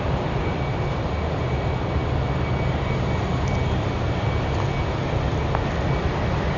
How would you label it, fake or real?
real